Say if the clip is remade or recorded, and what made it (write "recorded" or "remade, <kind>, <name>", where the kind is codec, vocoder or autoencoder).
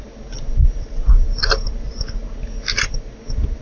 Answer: recorded